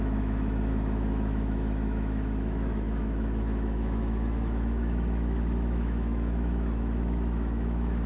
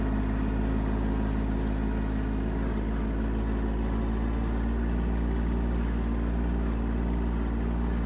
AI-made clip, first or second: first